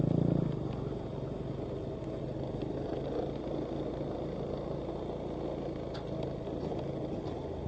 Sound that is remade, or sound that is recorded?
recorded